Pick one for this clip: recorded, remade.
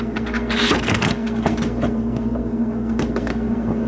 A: remade